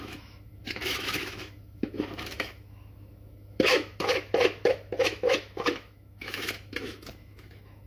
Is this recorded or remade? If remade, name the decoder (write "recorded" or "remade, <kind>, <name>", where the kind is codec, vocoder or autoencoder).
remade, autoencoder, DAC-VAE